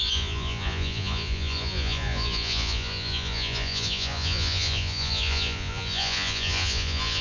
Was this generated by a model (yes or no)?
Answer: yes